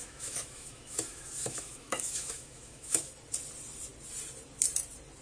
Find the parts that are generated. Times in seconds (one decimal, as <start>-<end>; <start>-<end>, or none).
0.0-3.1

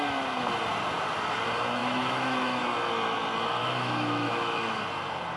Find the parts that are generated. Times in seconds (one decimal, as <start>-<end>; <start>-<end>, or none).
1.8-2.6; 3.6-4.8

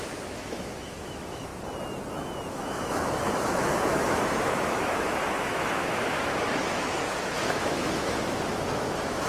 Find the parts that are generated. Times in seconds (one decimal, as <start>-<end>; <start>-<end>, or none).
0.0-1.5; 2.5-9.3

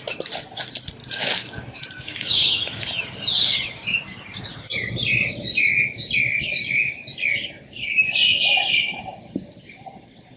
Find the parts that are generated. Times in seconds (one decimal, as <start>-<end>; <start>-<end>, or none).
1.0-3.0

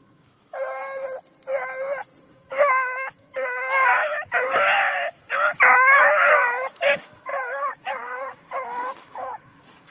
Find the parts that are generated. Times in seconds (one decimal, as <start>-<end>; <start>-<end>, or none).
0.0-0.8; 2.2-9.9

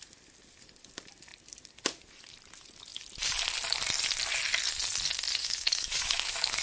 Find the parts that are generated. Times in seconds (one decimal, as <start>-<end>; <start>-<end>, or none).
5.4-6.6

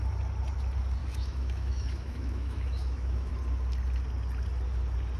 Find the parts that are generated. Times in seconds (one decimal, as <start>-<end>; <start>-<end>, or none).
1.0-3.3